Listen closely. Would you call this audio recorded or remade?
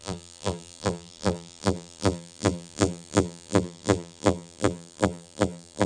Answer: remade